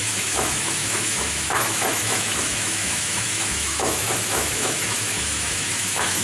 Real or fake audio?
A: fake